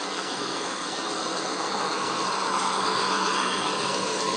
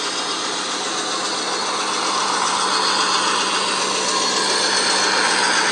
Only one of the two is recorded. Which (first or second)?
second